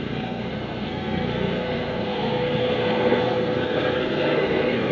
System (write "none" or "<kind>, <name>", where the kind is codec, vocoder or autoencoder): codec, SNAC